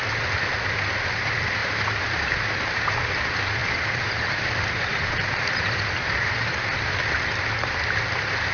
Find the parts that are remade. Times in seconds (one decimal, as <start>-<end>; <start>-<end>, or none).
1.6-3.1; 3.6-7.0